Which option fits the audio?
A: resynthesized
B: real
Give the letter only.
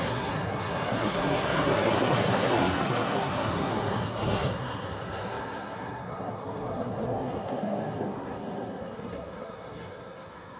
A